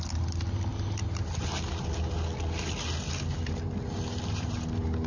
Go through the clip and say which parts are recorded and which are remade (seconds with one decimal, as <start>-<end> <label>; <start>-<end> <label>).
0.0-5.1 recorded